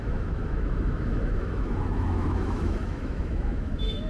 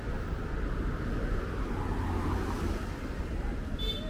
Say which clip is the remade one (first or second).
first